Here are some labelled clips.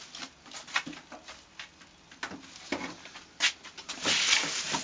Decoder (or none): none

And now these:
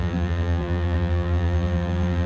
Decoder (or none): vocoder, BigVGAN v2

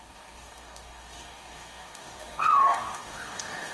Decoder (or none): codec, DAC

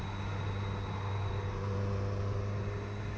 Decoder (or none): none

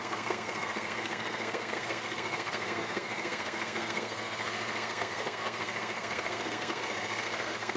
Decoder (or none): codec, SNAC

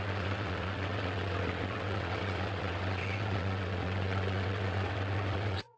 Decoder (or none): vocoder, WaveNeXt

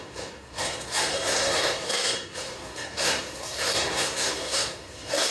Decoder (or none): codec, SNAC